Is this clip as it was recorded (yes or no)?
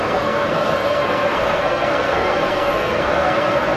no